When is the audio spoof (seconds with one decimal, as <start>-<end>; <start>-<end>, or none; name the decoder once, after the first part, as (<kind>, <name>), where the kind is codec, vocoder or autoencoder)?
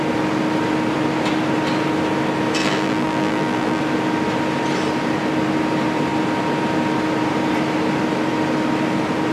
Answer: 2.6-3.8 (vocoder, BigVGAN v2)